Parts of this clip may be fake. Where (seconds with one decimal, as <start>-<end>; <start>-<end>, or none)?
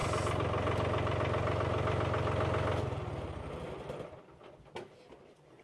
none